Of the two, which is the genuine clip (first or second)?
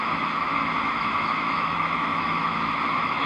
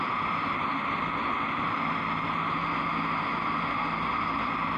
second